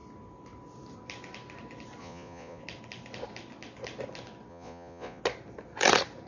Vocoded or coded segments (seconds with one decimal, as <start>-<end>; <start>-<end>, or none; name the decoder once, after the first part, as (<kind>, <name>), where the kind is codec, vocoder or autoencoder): 2.0-2.6 (vocoder, Vocos); 4.5-5.2